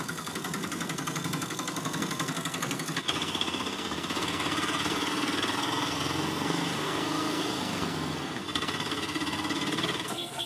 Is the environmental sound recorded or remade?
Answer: remade